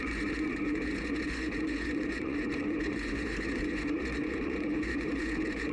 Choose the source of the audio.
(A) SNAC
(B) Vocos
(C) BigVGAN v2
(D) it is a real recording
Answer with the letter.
B